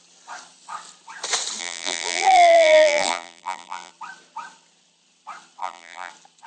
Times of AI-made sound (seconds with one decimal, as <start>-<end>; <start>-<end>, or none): 1.6-3.9; 5.6-6.1

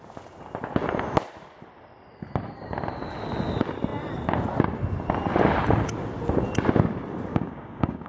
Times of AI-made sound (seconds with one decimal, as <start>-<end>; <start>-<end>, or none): 7.3-8.1

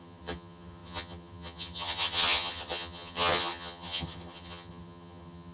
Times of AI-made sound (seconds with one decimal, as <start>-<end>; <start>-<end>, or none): 0.0-5.5

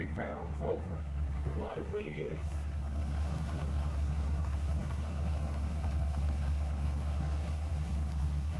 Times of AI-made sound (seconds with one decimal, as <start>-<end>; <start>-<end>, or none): 0.0-8.6